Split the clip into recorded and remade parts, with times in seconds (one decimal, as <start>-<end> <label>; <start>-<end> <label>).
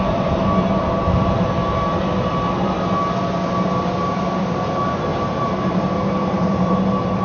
0.0-5.1 recorded; 5.1-6.8 remade; 6.8-7.2 recorded